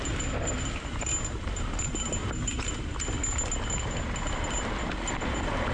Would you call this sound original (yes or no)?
yes